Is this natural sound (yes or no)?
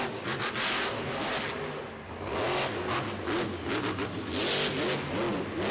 yes